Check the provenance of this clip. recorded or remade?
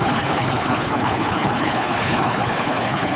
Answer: remade